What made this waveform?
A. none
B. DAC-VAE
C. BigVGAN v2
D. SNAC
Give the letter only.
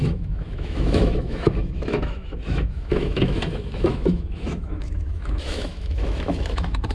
B